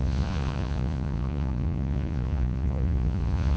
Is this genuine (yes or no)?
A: no